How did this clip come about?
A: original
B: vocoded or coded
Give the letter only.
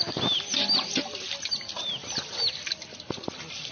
A